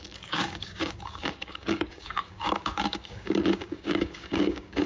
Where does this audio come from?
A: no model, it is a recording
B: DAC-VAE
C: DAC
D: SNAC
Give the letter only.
C